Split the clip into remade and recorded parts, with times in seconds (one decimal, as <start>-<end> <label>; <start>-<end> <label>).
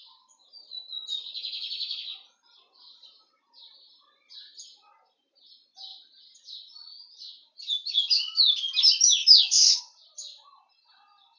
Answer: 0.0-9.2 recorded; 9.2-9.8 remade; 9.8-11.4 recorded